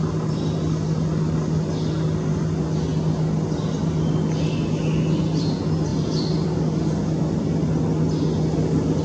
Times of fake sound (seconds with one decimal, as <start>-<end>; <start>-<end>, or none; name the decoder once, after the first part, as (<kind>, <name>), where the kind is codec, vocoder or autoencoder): none